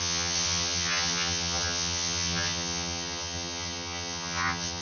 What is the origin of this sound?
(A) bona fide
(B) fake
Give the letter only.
B